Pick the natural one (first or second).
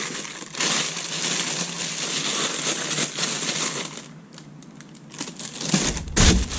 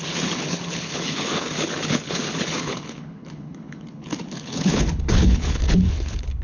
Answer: first